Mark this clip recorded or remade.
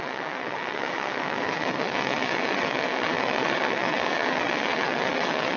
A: remade